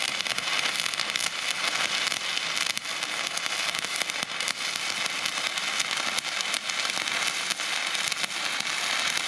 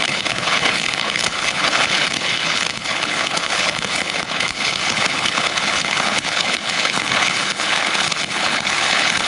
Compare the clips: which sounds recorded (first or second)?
first